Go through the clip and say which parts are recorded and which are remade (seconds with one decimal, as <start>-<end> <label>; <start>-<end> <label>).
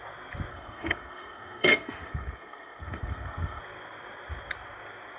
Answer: 0.0-0.5 recorded; 0.5-3.6 remade; 3.6-5.2 recorded